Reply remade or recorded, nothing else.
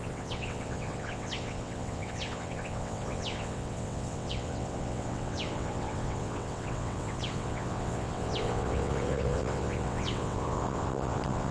remade